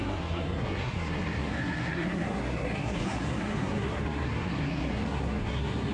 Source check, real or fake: fake